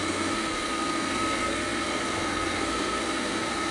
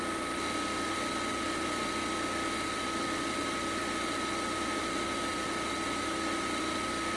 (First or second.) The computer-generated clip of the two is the first